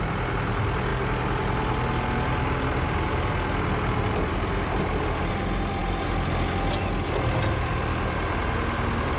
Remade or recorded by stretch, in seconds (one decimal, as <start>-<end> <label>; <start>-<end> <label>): 0.0-9.2 recorded